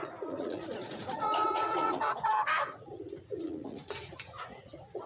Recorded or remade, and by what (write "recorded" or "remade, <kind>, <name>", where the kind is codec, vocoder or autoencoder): remade, vocoder, Vocos